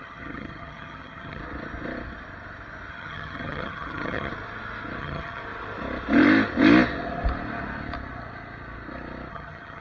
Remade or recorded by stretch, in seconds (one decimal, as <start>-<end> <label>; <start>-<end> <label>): 0.0-1.4 remade; 1.4-2.9 recorded; 2.9-4.3 remade; 4.3-5.0 recorded; 5.0-5.4 remade; 5.4-9.3 recorded; 9.3-9.8 remade